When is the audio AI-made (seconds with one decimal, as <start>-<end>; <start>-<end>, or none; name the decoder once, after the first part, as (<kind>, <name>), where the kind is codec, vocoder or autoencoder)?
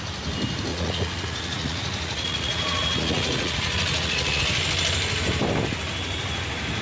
0.7-4.4 (vocoder, Vocos)